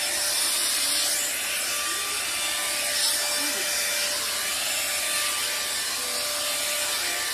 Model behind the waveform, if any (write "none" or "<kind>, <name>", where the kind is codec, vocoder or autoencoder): none